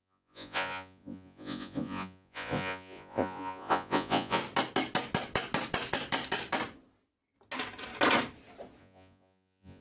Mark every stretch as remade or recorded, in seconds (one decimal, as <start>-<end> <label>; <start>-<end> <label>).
0.0-4.4 remade; 4.4-8.8 recorded; 8.8-9.8 remade